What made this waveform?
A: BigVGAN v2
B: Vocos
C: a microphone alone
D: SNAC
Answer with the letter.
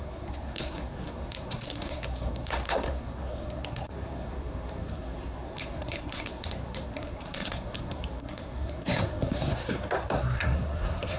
D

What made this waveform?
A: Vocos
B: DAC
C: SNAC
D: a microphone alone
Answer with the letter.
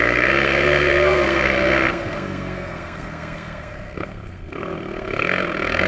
C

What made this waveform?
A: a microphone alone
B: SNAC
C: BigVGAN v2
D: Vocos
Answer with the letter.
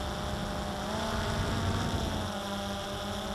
A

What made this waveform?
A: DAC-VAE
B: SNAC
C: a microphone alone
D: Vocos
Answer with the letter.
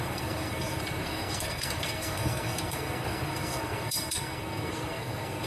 B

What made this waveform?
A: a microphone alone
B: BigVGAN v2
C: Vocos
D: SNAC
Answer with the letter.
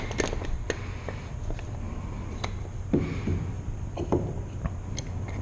A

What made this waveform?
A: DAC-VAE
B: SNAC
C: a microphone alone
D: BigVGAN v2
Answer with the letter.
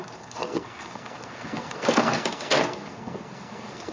B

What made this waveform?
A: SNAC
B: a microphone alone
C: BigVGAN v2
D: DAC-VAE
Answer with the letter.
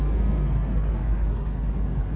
A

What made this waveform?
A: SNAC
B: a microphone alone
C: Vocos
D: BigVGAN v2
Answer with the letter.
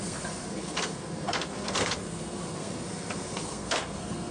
A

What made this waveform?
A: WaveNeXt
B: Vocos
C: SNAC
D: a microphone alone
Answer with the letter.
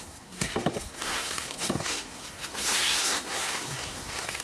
C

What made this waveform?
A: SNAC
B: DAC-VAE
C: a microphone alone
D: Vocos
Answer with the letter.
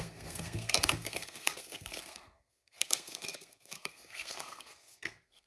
A